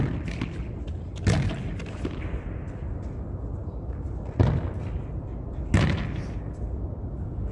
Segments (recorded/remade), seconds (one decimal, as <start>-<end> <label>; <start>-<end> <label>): 0.0-7.5 recorded